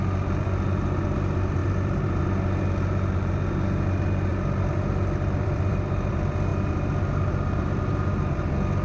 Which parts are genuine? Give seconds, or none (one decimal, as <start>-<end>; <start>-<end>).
0.0-1.6; 2.2-4.3; 6.1-8.8